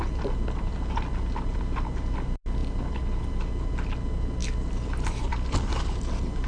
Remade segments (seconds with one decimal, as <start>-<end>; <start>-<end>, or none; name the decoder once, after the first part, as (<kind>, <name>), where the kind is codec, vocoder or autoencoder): none